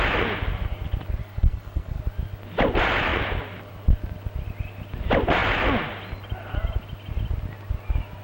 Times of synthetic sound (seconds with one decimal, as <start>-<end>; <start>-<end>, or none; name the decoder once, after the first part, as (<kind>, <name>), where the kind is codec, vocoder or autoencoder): 1.2-2.0 (codec, SNAC)